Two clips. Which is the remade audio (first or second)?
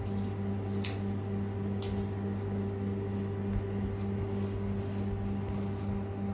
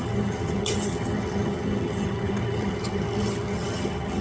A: second